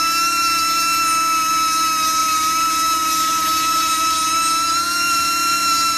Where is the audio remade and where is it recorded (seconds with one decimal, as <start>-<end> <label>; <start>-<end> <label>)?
0.0-2.2 recorded; 2.2-6.0 remade